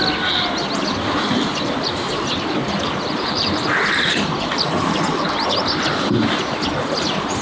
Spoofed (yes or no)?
no